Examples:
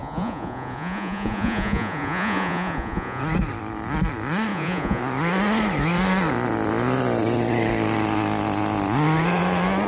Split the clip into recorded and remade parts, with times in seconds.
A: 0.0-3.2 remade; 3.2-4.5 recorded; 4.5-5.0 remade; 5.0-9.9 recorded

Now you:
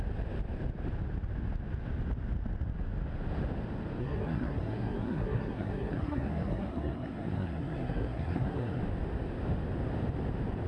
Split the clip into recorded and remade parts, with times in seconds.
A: 0.0-4.0 recorded; 4.0-8.8 remade; 8.8-10.7 recorded

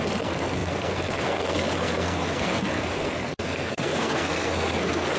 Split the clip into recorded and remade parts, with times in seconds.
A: 0.0-5.2 remade

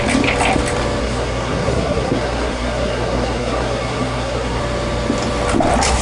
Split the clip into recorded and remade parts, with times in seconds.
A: 0.0-1.0 recorded; 1.0-4.6 remade; 4.6-6.0 recorded

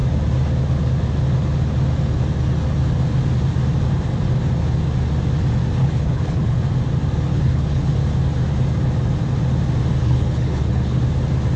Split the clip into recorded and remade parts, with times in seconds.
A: 0.0-5.8 recorded; 5.8-6.6 remade; 6.6-7.3 recorded; 7.3-7.9 remade; 7.9-10.0 recorded; 10.0-11.0 remade; 11.0-11.6 recorded